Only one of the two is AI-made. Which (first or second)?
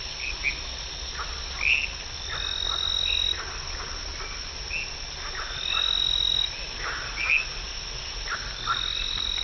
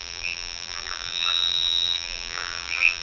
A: second